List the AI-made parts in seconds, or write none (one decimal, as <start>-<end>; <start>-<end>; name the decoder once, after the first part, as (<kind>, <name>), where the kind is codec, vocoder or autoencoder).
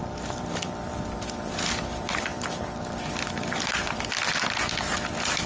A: none